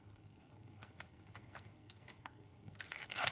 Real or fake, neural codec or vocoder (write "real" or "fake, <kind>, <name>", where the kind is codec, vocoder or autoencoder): fake, codec, SNAC